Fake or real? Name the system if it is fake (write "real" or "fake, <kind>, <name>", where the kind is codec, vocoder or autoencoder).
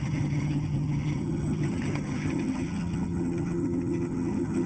fake, vocoder, HiFi-GAN